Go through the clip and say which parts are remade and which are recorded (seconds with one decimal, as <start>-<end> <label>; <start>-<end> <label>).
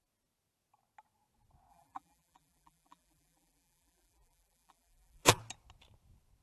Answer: 0.0-1.7 recorded; 1.7-5.4 remade; 5.4-6.4 recorded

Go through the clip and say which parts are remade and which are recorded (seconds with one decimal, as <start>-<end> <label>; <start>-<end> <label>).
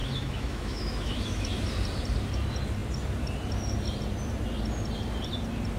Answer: 0.0-1.6 remade; 1.6-5.8 recorded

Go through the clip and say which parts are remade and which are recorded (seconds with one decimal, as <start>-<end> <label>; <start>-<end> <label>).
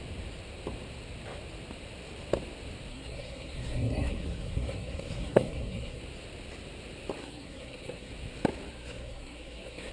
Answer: 0.0-2.9 recorded; 2.9-6.0 remade; 6.0-7.2 recorded; 7.2-8.1 remade; 8.1-8.7 recorded; 8.7-9.9 remade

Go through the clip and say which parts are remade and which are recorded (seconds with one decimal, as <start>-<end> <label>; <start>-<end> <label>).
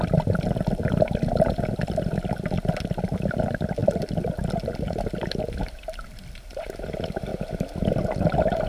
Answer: 0.0-8.7 recorded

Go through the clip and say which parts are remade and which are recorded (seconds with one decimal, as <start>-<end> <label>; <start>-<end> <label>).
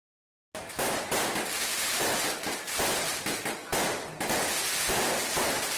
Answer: 0.0-0.7 recorded; 0.7-1.7 remade; 1.7-5.2 recorded; 5.2-5.8 remade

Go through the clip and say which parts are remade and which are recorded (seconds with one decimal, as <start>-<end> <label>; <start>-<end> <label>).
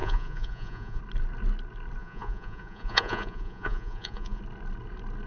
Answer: 0.0-1.0 remade; 1.0-2.0 recorded; 2.0-4.4 remade; 4.4-5.3 recorded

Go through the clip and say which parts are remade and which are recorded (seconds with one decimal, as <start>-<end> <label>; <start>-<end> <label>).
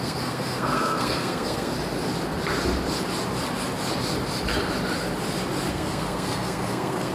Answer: 0.0-1.7 remade; 1.7-5.7 recorded; 5.7-7.1 remade